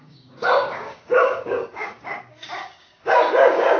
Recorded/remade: remade